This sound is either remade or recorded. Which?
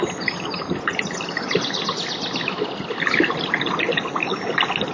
recorded